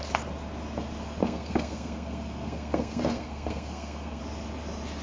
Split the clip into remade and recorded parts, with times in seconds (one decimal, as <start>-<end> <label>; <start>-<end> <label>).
0.0-1.2 recorded; 1.2-4.2 remade; 4.2-5.0 recorded

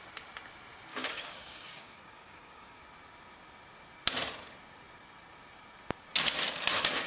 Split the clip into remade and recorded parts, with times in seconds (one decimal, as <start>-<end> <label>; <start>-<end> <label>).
0.0-0.9 recorded; 0.9-2.8 remade; 2.8-7.1 recorded

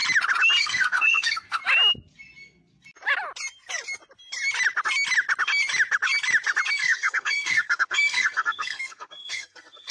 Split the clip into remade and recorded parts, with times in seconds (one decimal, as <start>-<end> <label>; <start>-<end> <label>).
0.0-0.6 recorded; 0.6-1.6 remade; 1.6-6.7 recorded; 6.7-9.9 remade

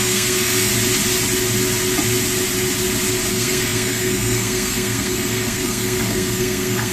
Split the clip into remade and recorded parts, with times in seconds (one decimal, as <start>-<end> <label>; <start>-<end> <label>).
0.0-0.7 remade; 0.7-3.3 recorded; 3.3-6.9 remade

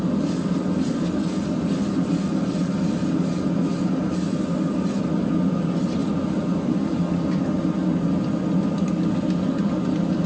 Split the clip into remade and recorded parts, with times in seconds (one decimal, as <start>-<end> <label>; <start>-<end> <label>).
0.0-10.3 recorded